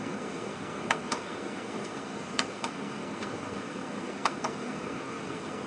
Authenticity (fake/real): fake